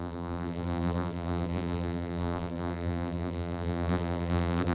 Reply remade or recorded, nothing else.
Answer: remade